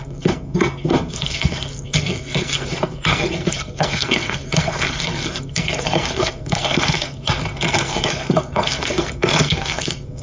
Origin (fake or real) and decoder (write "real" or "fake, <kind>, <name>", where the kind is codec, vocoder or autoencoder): fake, codec, SNAC